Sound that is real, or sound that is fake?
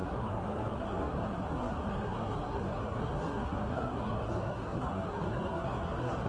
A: fake